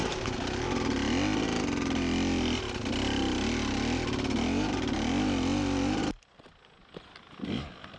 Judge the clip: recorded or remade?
recorded